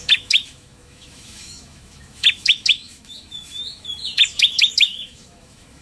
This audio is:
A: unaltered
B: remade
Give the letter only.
B